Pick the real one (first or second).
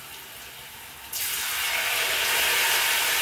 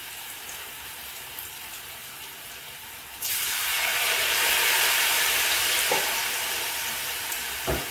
first